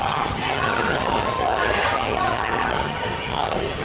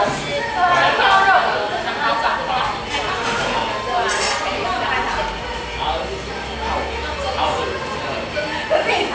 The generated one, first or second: first